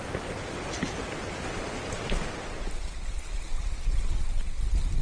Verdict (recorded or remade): recorded